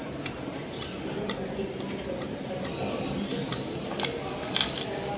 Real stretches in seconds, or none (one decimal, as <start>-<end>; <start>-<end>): 2.5-5.2